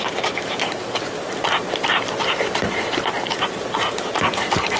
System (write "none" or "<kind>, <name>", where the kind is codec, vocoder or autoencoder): vocoder, BigVGAN v2